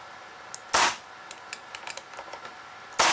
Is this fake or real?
real